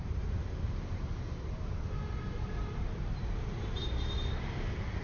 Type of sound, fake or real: fake